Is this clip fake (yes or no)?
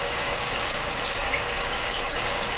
yes